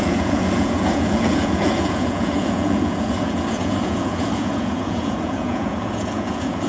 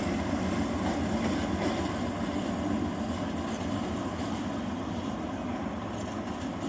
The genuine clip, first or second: second